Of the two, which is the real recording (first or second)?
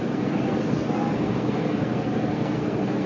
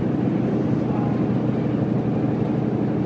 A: second